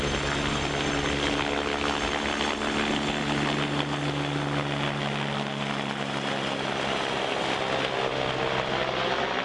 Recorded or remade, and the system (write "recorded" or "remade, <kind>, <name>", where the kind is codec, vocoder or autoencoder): recorded